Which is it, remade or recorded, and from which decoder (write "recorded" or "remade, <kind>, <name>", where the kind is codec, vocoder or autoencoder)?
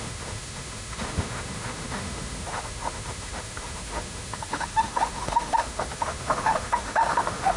remade, autoencoder, DAC-VAE